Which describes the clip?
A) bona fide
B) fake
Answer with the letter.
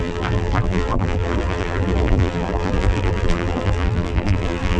B